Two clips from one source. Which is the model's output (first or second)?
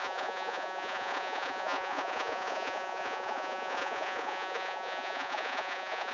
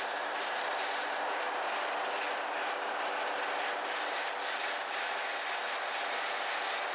first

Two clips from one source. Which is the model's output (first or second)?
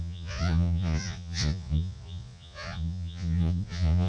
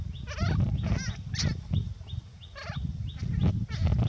first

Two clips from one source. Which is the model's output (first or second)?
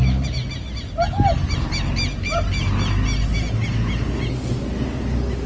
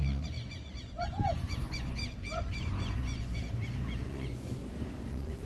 second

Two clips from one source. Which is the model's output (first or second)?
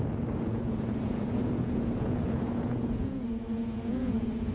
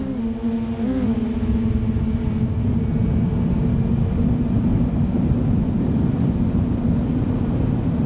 first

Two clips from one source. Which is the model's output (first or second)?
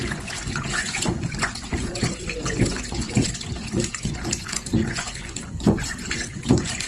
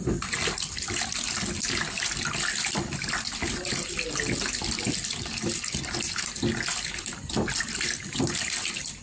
first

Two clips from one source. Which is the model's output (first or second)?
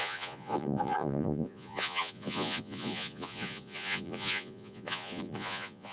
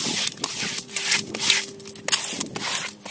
first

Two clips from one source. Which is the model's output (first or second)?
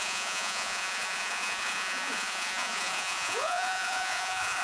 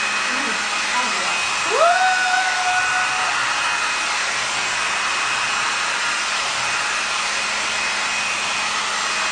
first